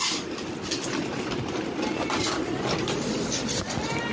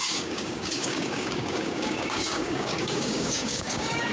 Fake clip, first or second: second